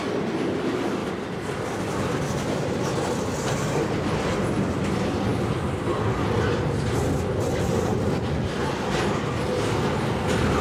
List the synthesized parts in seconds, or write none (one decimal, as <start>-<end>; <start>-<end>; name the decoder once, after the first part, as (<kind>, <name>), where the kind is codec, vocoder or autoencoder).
1.0-4.0 (vocoder, BigVGAN v2); 5.3-5.9